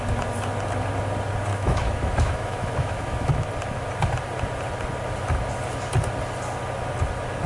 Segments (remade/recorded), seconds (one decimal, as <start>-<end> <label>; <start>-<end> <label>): 0.0-1.5 recorded; 1.5-3.5 remade; 3.5-7.5 recorded